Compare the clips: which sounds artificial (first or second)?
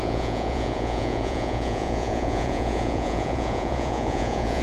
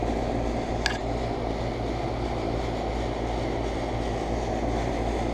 first